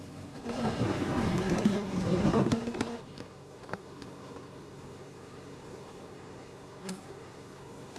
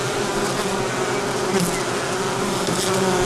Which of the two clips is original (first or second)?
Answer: second